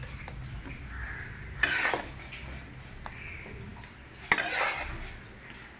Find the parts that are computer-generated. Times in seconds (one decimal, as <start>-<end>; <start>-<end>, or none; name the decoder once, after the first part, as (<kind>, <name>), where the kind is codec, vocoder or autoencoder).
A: none